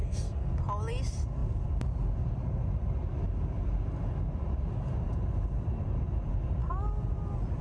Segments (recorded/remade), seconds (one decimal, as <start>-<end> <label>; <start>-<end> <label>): 0.0-0.5 remade; 0.5-7.6 recorded